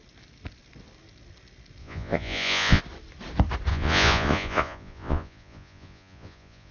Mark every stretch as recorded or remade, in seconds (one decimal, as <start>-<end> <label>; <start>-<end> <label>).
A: 0.0-1.8 recorded; 1.8-2.8 remade; 2.8-3.7 recorded; 3.7-6.7 remade